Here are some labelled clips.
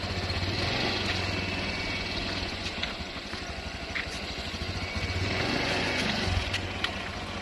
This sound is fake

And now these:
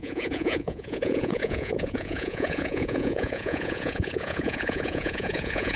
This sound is fake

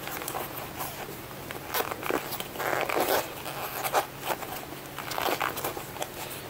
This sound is real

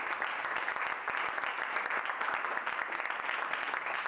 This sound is real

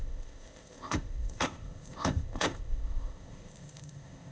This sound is fake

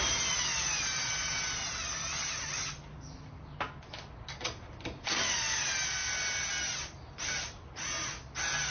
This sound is real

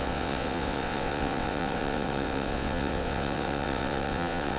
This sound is fake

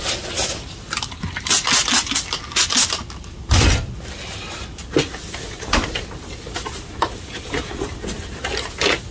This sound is real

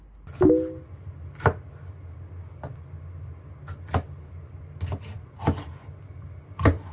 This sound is real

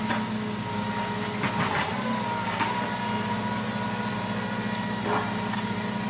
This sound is real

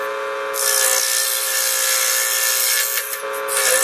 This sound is real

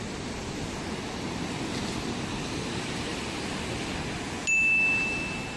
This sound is real